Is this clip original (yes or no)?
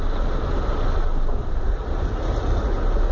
yes